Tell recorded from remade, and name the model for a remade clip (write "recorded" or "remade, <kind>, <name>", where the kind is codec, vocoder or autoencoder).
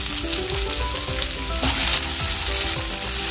recorded